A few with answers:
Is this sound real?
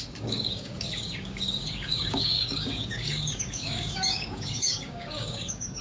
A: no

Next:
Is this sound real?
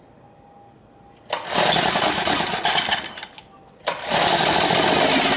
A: yes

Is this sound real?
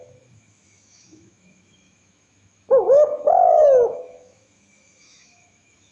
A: no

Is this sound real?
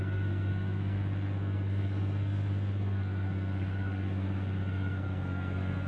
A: no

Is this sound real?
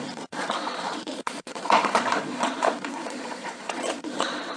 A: no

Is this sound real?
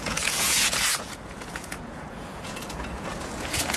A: no